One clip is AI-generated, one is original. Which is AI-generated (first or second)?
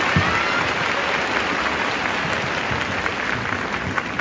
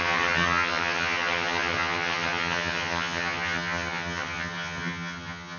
second